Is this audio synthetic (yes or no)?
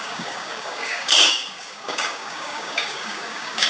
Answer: yes